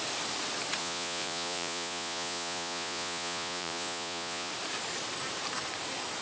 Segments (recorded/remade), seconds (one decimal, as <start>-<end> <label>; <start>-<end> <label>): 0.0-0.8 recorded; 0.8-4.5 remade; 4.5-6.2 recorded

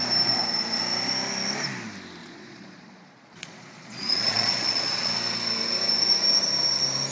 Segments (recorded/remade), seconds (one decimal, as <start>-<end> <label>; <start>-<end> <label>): 0.0-2.2 recorded; 2.2-5.1 remade; 5.1-7.1 recorded

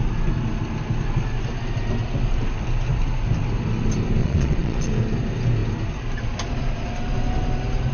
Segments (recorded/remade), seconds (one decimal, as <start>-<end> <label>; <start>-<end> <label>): 0.0-4.2 recorded; 4.2-4.9 remade; 4.9-7.9 recorded

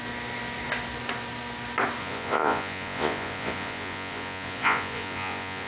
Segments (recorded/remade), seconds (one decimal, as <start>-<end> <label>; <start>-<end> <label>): 0.0-2.0 recorded; 2.0-5.7 remade